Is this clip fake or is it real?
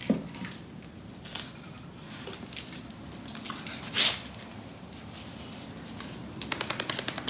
real